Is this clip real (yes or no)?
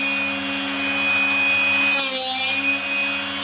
yes